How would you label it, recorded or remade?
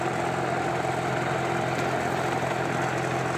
recorded